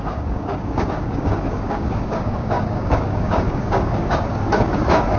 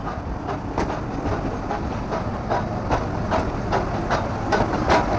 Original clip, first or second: second